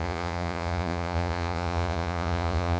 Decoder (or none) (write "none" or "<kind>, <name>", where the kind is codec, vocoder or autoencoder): vocoder, Vocos